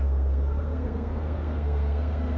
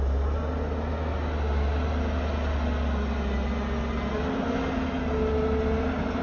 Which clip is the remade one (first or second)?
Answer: first